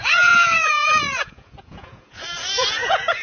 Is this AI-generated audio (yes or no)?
yes